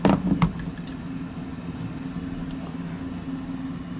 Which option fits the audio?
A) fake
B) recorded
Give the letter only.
B